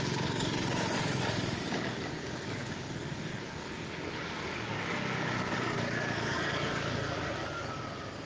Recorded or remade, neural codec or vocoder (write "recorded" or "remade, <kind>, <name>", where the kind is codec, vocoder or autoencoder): remade, codec, DAC